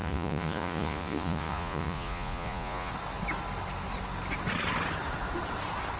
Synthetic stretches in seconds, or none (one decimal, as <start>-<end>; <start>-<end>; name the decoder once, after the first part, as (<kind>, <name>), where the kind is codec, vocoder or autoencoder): 0.0-2.9 (vocoder, Vocos)